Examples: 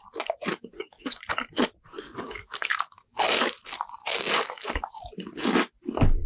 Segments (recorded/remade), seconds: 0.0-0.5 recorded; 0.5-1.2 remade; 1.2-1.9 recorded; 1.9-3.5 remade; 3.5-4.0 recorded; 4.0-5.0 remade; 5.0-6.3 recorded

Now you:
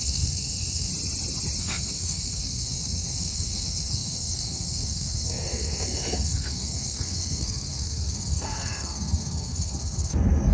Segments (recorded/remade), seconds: 0.0-0.9 remade; 0.9-1.6 recorded; 1.6-10.5 remade